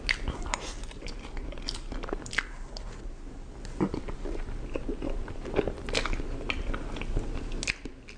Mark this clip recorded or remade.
recorded